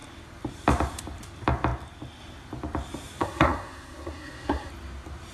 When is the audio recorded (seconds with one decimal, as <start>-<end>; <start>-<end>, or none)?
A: 0.0-3.2; 4.7-5.3